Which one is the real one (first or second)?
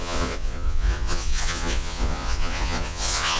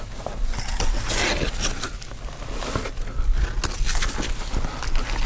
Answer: second